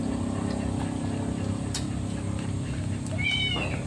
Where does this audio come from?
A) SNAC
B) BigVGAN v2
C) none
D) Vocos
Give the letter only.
C